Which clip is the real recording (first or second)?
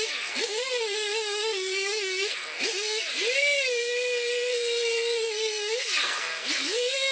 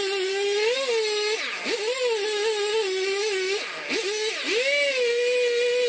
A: second